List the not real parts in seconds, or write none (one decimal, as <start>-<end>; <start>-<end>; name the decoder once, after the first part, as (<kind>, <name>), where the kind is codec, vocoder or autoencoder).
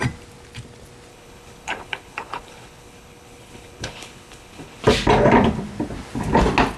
1.1-4.8 (codec, HILCodec)